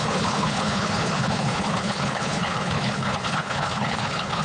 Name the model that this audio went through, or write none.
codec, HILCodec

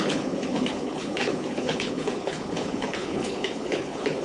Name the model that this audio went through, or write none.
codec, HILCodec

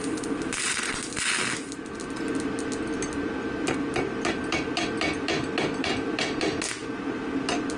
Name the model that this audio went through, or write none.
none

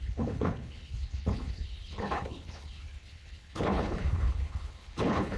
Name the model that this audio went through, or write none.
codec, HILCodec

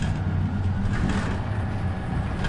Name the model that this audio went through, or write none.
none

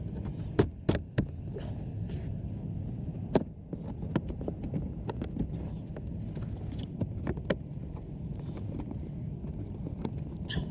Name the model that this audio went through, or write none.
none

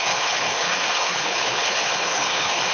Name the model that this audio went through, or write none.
codec, HILCodec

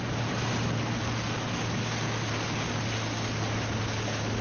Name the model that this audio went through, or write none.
none